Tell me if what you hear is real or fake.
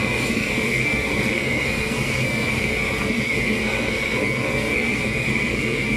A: fake